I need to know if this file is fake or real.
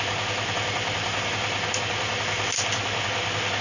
real